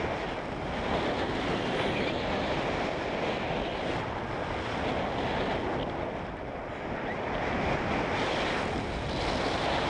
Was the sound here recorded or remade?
recorded